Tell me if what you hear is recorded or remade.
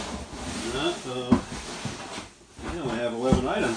recorded